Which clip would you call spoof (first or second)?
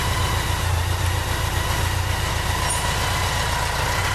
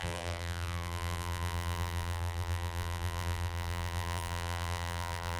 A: second